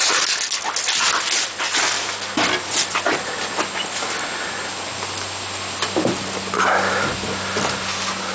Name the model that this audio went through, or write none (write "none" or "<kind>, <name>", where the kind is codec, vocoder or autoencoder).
none